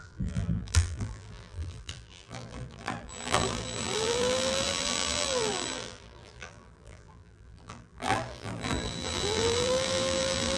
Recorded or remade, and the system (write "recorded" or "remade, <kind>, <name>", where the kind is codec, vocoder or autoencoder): remade, vocoder, BigVGAN v2